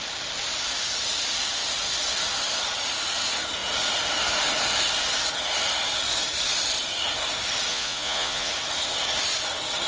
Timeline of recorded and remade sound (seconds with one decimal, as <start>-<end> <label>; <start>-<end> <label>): 0.0-7.7 recorded; 7.7-8.5 remade; 8.5-9.9 recorded

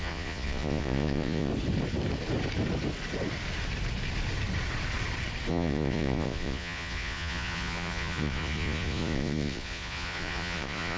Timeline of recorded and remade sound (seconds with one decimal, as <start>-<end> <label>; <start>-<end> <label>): 0.0-1.5 remade; 1.5-5.5 recorded; 5.5-11.0 remade

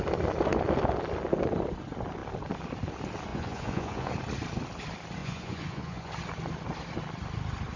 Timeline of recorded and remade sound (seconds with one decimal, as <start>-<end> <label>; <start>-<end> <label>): 0.0-3.3 recorded; 3.3-4.1 remade; 4.1-5.2 recorded; 5.2-6.1 remade; 6.1-7.8 recorded

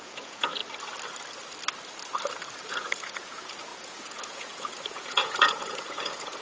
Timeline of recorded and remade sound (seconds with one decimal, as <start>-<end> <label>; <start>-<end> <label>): 0.0-0.6 remade; 0.6-2.7 recorded; 2.7-6.4 remade